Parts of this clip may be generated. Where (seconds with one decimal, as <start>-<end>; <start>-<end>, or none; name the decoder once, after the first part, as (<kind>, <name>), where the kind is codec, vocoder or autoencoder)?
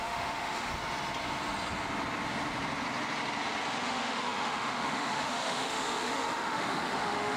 0.0-0.7 (autoencoder, DAC-VAE); 3.8-7.4